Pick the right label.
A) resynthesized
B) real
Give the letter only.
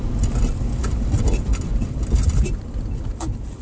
B